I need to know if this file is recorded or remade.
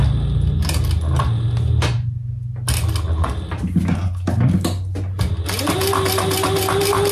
recorded